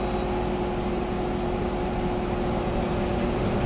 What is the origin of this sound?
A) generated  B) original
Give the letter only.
B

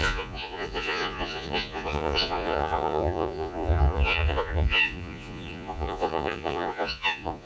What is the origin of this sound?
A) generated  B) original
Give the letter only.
A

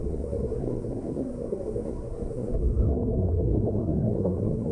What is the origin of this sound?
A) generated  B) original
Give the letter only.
A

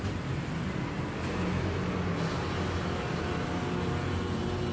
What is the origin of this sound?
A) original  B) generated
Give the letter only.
A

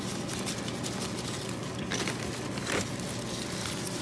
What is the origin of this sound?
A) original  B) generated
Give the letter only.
A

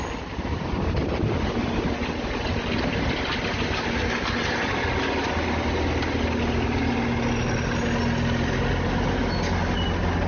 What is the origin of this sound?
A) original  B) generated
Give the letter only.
A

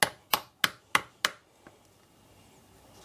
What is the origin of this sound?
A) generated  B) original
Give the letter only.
B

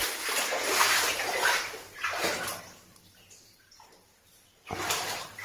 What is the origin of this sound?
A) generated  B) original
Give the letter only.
A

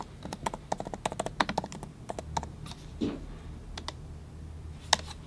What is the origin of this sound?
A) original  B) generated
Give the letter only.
A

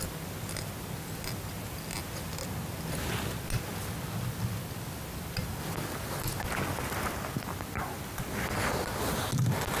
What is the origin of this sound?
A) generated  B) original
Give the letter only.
B